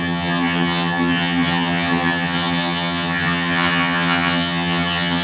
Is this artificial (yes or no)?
yes